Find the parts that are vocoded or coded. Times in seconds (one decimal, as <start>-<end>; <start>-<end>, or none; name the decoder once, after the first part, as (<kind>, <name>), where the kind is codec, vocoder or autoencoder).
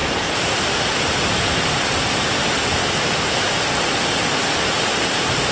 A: none